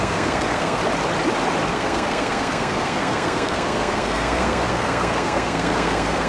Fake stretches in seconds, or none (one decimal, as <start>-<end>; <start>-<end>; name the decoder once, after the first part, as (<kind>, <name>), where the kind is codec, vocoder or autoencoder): 0.0-0.8 (codec, SNAC); 1.7-6.3